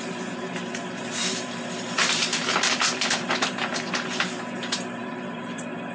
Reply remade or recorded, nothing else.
remade